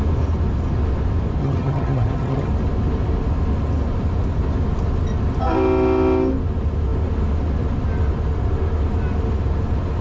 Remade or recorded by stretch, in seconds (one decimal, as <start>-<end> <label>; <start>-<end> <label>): 0.0-1.4 recorded; 1.4-2.5 remade; 2.5-10.0 recorded